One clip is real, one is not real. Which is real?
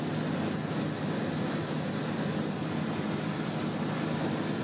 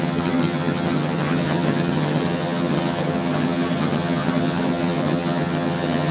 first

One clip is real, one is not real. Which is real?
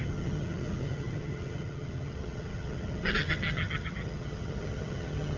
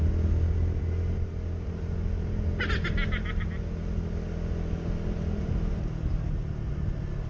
second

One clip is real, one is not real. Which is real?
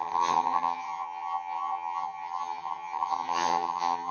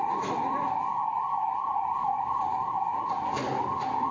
second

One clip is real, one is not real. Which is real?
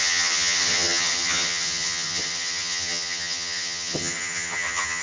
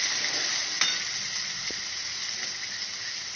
second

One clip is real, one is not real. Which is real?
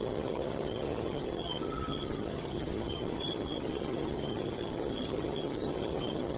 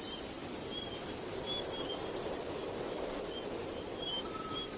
second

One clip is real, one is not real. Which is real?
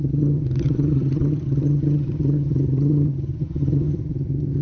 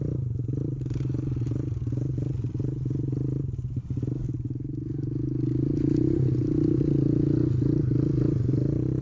second